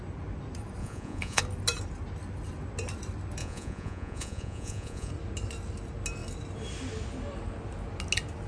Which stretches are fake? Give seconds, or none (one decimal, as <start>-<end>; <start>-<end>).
0.8-1.4; 3.4-5.1